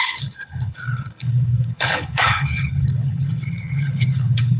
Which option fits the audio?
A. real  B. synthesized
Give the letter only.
B